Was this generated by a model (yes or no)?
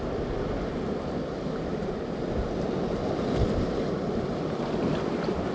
no